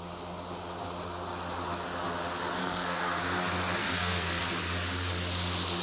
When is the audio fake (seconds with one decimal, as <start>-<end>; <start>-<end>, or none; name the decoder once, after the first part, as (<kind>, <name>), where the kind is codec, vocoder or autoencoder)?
2.6-3.2 (codec, SNAC); 3.8-4.4